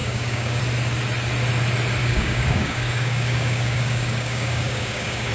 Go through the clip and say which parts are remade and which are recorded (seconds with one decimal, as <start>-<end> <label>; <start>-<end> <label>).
0.0-0.6 remade; 0.6-2.0 recorded; 2.0-5.3 remade